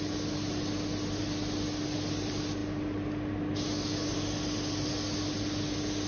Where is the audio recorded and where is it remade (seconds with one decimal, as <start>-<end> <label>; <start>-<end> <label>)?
0.0-6.1 recorded